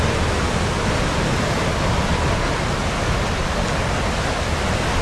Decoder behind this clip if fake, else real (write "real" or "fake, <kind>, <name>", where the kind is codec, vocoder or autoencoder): real